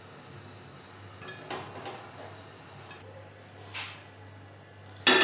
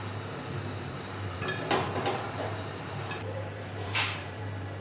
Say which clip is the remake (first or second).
second